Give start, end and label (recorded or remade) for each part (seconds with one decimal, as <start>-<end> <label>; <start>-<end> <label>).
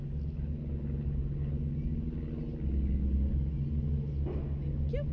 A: 0.0-5.1 recorded